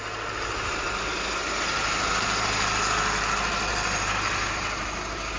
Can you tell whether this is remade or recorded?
recorded